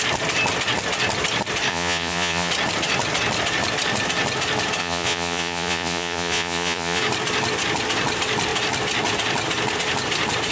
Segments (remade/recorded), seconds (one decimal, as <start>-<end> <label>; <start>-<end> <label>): 0.0-1.7 recorded; 1.7-2.5 remade; 2.5-4.8 recorded; 4.8-7.0 remade; 7.0-10.5 recorded